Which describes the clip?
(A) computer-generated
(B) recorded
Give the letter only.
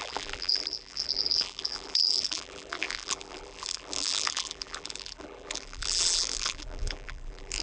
A